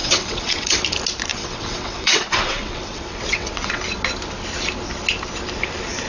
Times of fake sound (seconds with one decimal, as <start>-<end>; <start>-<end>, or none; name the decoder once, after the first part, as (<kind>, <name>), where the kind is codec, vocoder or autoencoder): 0.0-0.8 (vocoder, WaveNeXt); 1.3-3.8